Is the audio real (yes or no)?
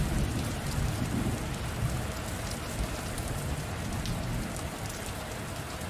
yes